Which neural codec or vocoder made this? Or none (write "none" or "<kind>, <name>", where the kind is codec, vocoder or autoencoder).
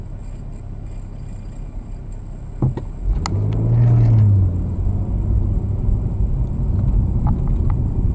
none